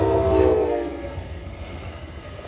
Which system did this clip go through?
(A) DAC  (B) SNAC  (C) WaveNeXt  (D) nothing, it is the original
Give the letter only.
B